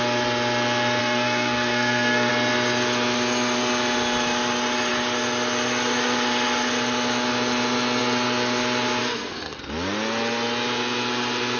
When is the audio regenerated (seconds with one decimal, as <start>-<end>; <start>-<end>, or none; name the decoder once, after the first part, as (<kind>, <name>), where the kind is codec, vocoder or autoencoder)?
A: 1.0-2.3 (codec, SNAC); 9.0-9.6